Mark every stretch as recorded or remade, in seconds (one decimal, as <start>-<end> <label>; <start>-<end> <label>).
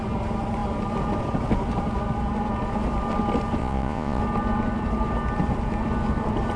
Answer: 0.0-3.6 recorded; 3.6-4.2 remade; 4.2-6.6 recorded